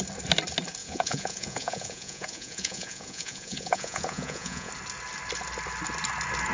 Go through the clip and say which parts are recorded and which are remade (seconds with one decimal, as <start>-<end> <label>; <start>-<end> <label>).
0.0-0.8 recorded; 0.8-4.7 remade; 4.7-6.5 recorded